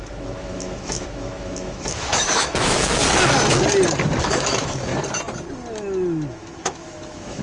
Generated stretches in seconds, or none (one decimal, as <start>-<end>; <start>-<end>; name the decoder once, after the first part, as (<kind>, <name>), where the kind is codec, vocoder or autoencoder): 0.0-3.0 (autoencoder, DAC-VAE); 4.2-4.9; 6.3-7.4